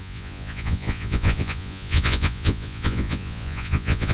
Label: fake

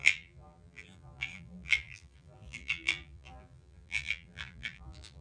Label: fake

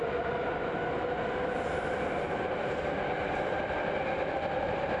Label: real